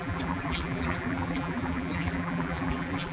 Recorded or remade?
remade